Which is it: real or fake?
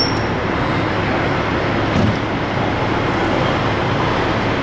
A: real